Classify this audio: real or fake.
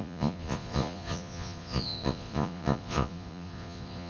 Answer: fake